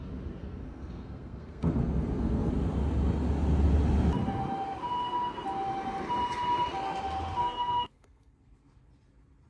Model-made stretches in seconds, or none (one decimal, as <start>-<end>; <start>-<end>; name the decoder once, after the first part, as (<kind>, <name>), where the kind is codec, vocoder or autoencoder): 0.4-2.5 (codec, SNAC); 7.4-8.9